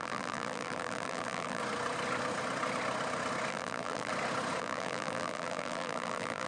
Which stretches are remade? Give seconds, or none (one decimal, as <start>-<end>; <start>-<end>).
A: 0.0-1.6; 3.5-4.1; 4.6-6.5